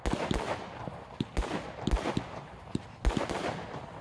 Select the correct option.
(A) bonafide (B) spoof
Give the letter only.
A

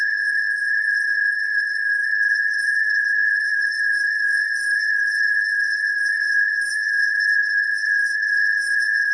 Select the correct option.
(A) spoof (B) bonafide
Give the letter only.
A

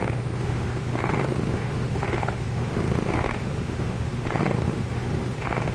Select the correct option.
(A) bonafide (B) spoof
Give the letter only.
B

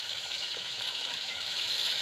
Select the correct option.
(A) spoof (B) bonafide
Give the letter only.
A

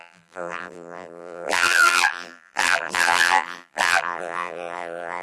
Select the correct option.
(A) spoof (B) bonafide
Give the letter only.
A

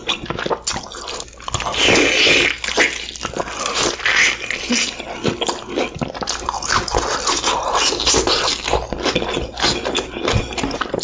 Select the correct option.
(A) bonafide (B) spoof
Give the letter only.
A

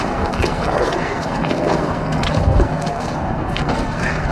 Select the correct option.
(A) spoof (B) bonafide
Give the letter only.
A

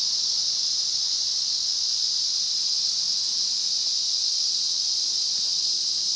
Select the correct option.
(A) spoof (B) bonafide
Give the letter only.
A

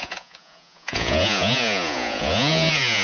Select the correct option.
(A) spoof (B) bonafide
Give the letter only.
A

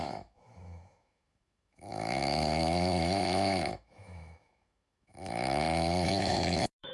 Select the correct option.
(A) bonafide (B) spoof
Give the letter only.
B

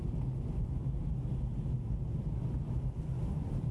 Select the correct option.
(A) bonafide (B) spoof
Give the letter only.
A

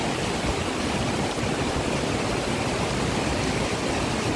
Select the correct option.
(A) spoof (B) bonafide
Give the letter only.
B